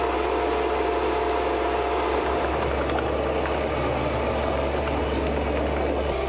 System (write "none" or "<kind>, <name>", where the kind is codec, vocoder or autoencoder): none